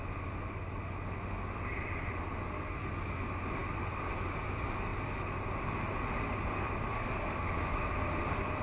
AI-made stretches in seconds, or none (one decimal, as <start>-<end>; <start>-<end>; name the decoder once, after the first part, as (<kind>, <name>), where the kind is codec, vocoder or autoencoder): 2.4-2.9 (codec, SNAC); 6.9-7.5